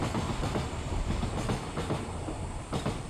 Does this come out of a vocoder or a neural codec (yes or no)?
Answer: no